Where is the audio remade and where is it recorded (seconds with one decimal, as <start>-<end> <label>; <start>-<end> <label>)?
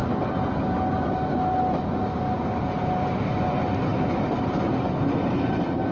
0.0-5.9 recorded